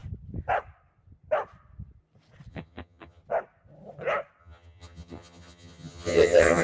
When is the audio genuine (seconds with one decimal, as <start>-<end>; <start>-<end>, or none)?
0.0-2.5; 3.2-4.4